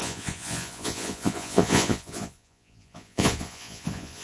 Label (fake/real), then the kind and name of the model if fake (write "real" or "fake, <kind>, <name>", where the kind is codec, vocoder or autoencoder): fake, vocoder, Vocos